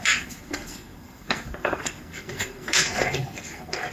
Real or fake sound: fake